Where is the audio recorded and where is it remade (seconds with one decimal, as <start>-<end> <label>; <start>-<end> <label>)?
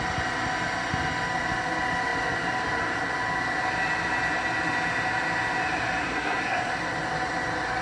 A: 0.0-6.0 recorded; 6.0-6.7 remade; 6.7-7.8 recorded